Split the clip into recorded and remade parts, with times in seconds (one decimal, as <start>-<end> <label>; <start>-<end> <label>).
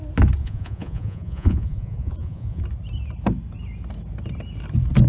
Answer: 0.0-0.4 recorded; 0.4-2.6 remade; 2.6-5.1 recorded